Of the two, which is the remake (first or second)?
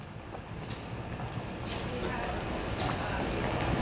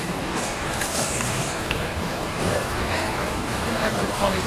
second